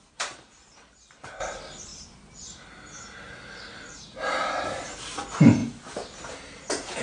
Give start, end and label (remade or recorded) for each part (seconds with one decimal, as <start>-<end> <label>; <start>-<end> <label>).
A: 0.0-1.9 remade; 1.9-5.0 recorded; 5.0-5.6 remade; 5.6-7.0 recorded